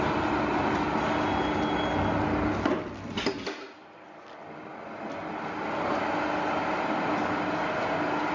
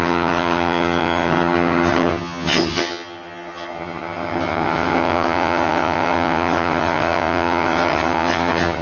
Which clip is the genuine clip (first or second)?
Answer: first